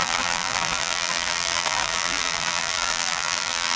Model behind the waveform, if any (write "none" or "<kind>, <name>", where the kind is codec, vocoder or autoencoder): vocoder, BigVGAN v2